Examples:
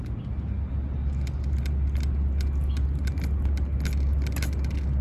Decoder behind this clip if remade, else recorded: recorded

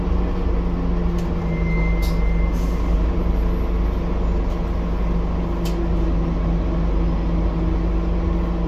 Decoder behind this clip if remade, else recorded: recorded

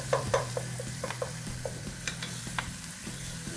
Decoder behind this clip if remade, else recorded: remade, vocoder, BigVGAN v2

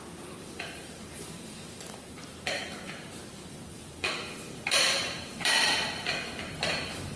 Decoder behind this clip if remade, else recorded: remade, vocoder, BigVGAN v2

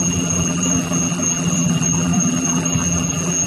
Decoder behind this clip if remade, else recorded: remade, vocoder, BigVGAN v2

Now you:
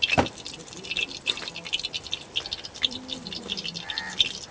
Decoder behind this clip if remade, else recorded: remade, vocoder, BigVGAN v2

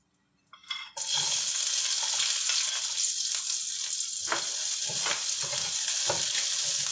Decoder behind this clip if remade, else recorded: recorded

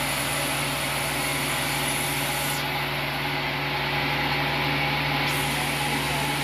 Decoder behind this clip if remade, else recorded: recorded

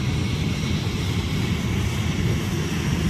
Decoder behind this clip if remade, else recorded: recorded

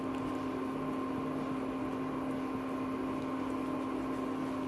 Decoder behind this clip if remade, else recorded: recorded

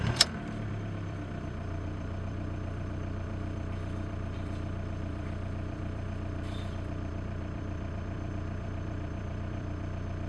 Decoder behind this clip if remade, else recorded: remade, vocoder, BigVGAN v2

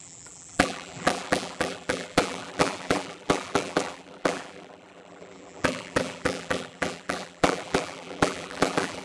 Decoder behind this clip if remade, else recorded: remade, vocoder, BigVGAN v2